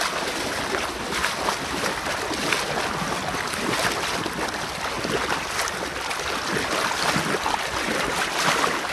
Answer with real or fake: real